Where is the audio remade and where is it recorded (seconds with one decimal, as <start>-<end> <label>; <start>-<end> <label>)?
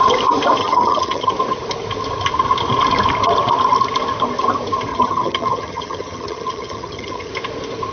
0.0-0.6 recorded; 0.6-1.3 remade; 1.3-4.9 recorded; 4.9-7.3 remade; 7.3-7.9 recorded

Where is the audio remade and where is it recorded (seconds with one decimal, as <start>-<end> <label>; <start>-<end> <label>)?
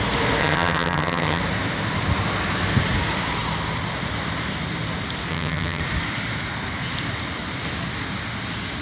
0.0-0.4 recorded; 0.4-1.4 remade; 1.4-5.3 recorded; 5.3-5.8 remade; 5.8-8.8 recorded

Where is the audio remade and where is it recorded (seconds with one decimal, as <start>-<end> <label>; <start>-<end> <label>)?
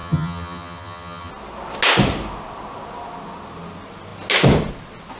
0.0-1.3 remade; 1.3-5.2 recorded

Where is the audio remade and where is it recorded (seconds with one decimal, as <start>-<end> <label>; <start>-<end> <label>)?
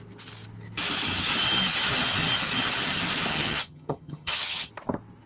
0.0-3.3 recorded; 3.3-4.7 remade; 4.7-5.3 recorded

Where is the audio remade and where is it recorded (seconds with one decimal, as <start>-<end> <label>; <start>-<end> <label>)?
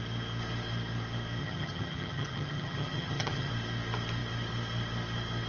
0.0-1.4 recorded; 1.4-3.5 remade; 3.5-5.5 recorded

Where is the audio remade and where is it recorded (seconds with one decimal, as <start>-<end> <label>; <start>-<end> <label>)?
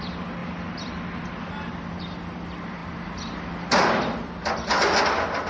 0.0-5.5 recorded